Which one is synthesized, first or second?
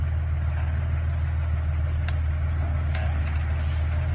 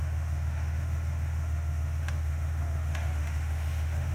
second